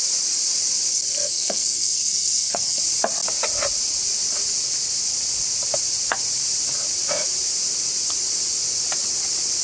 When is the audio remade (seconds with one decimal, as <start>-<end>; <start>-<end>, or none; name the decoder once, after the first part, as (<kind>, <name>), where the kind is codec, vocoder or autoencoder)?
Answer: 0.9-2.8 (codec, SNAC)